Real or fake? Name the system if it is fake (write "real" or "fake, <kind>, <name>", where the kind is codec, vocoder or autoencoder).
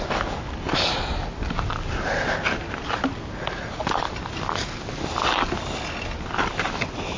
real